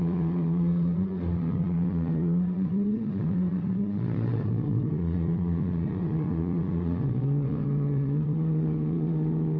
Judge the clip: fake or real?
fake